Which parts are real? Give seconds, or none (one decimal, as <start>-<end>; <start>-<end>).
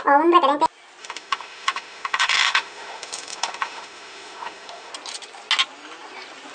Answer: 0.0-1.0; 4.9-6.5